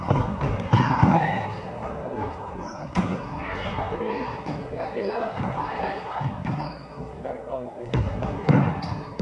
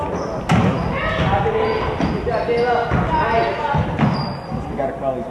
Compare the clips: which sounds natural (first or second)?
second